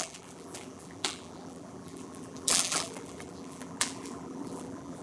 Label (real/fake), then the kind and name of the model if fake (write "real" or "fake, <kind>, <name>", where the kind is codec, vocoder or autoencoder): fake, vocoder, BigVGAN v2